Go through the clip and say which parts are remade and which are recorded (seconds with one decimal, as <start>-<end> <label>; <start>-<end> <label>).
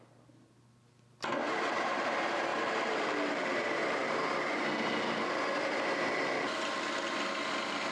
0.0-1.4 recorded; 1.4-1.9 remade; 1.9-2.5 recorded; 2.5-3.3 remade; 3.3-7.9 recorded